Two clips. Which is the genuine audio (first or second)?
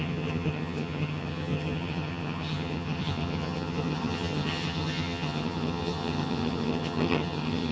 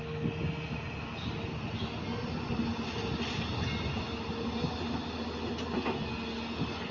second